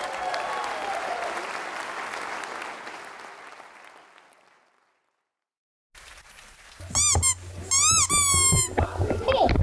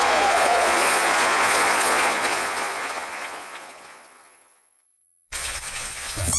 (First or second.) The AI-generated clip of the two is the second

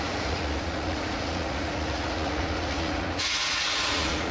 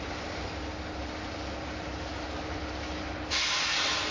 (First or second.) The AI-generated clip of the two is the first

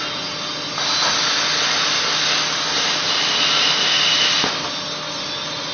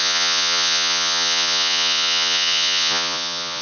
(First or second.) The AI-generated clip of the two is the second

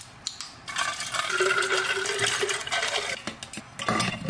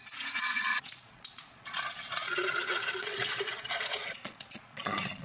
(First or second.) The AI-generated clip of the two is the second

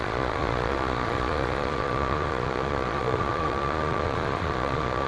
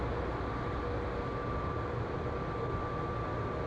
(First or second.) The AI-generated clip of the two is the first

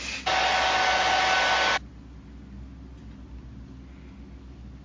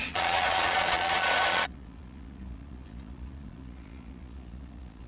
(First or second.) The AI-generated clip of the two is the second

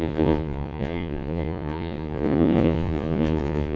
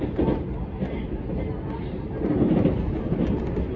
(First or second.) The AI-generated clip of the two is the first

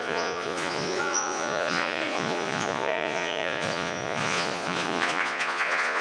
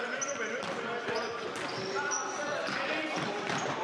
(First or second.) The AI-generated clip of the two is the first